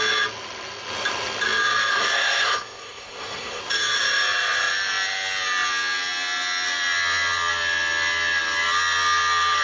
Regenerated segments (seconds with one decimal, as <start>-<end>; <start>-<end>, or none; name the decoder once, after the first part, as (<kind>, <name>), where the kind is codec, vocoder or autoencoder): 1.9-3.6 (codec, SNAC)